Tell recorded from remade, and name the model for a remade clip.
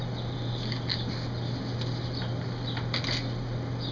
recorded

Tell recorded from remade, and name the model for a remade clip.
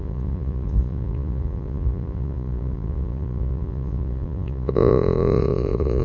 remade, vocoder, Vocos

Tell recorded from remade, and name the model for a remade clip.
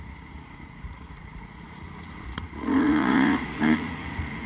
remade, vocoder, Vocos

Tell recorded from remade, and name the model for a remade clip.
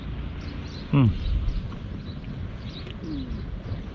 recorded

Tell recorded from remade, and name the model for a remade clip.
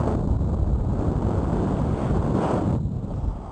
recorded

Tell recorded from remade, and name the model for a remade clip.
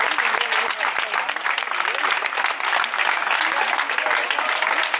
recorded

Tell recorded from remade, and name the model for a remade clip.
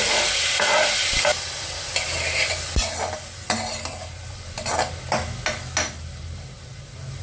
recorded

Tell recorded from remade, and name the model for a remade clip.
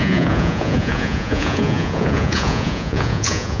remade, vocoder, Vocos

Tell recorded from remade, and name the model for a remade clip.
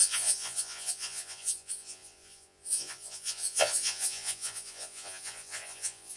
remade, vocoder, Vocos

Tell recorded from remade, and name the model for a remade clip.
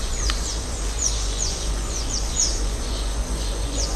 remade, vocoder, Vocos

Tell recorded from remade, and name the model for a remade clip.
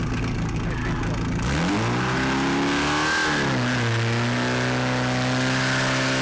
recorded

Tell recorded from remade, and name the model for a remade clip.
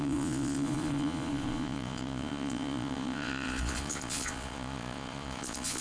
remade, vocoder, Vocos